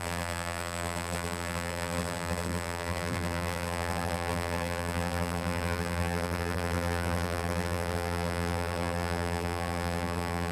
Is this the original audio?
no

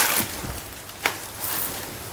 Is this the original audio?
yes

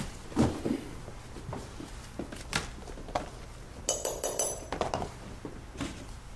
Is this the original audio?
yes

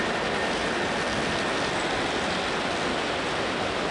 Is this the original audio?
yes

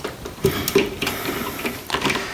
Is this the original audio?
yes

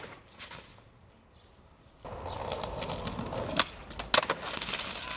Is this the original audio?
yes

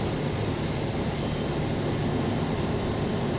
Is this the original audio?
yes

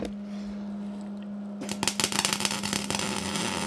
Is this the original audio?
yes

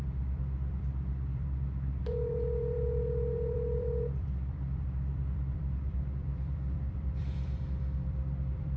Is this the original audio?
no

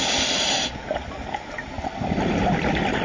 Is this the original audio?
yes